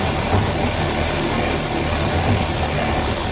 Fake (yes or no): no